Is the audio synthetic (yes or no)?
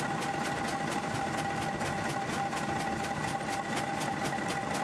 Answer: no